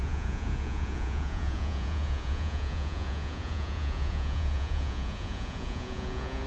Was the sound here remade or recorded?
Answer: remade